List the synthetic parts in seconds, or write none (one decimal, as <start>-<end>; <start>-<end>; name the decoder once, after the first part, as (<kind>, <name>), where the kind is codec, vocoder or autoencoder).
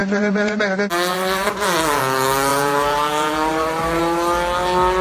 0.0-0.6 (vocoder, BigVGAN v2); 1.1-2.0; 2.5-4.0